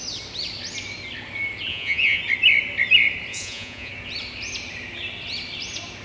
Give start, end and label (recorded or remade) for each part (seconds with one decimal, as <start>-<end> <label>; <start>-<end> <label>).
0.0-1.7 recorded; 1.7-2.2 remade; 2.2-3.3 recorded; 3.3-3.9 remade; 3.9-6.0 recorded